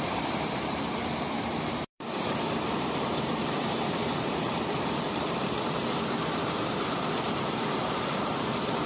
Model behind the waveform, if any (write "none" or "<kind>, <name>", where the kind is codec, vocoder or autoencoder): vocoder, BigVGAN v2